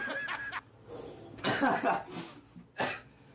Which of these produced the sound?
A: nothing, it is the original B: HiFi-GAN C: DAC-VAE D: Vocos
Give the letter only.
A